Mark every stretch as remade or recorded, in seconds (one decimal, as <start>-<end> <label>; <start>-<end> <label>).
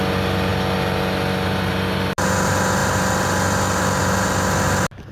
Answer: 0.0-5.1 recorded